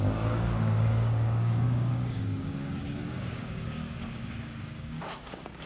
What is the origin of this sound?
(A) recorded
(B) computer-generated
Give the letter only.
B